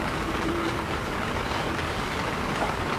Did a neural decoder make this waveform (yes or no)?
yes